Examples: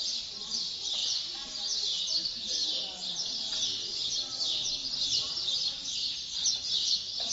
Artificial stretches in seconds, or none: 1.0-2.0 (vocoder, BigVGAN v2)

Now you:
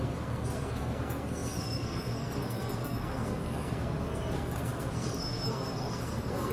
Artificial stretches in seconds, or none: 0.0-6.5 (codec, SNAC)

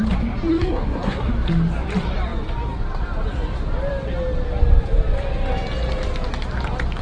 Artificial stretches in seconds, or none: 0.5-1.3 (codec, SNAC)

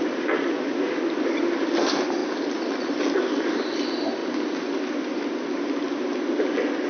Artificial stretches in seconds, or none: none

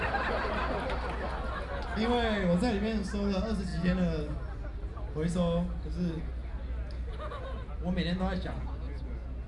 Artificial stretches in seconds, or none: none

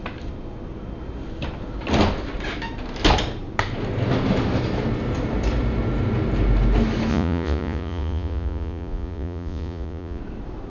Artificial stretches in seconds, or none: 7.1-10.2 (vocoder, Vocos)